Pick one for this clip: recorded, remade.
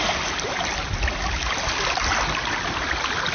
recorded